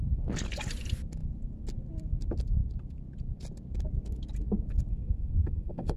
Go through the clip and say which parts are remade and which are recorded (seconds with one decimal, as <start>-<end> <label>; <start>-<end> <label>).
0.0-4.9 recorded; 4.9-6.0 remade